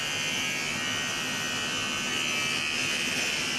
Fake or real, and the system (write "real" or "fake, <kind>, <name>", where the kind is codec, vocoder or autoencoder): real